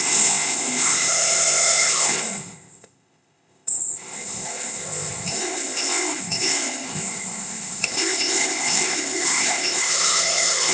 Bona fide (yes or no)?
no